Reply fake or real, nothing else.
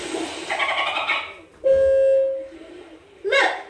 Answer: real